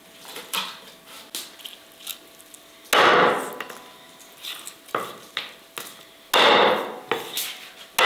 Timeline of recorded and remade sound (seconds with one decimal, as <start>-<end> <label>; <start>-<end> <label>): 0.0-8.1 recorded